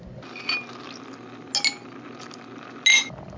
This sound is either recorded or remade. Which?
recorded